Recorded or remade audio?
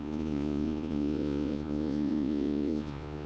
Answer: remade